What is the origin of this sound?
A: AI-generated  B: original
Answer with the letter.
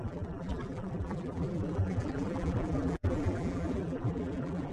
A